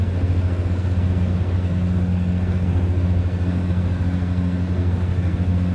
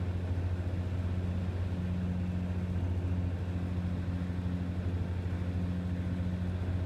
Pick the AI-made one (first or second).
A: first